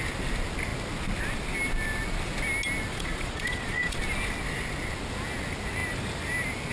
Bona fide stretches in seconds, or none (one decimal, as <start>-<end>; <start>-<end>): 0.0-2.9; 4.0-6.7

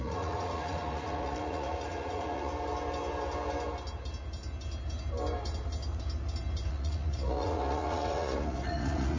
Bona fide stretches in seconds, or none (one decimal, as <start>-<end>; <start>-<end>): 2.5-6.7

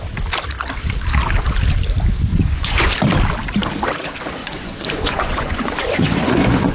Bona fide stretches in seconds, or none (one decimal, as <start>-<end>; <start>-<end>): 0.0-2.3; 2.9-4.4

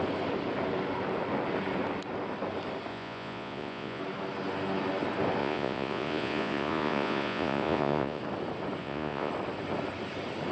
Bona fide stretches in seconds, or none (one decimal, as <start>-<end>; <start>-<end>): 0.0-2.9; 4.0-5.4; 8.2-8.8; 9.3-10.5

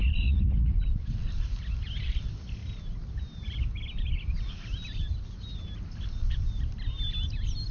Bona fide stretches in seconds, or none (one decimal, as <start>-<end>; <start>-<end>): 0.8-7.7

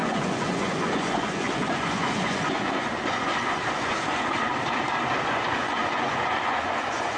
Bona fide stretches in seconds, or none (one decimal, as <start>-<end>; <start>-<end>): 4.3-5.2